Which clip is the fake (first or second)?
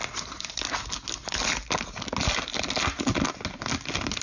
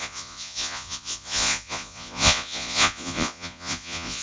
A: second